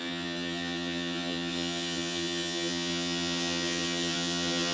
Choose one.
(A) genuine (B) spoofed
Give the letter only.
B